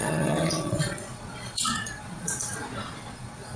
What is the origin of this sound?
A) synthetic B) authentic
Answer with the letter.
A